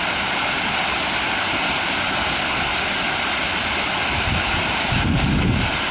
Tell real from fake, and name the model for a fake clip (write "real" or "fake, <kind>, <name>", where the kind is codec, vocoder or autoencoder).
real